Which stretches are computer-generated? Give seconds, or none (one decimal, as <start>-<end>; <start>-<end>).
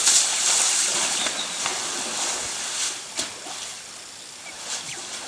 0.0-1.7